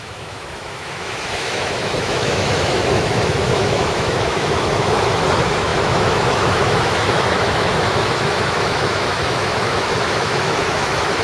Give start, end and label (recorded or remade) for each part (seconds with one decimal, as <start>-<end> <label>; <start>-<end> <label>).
0.0-11.2 remade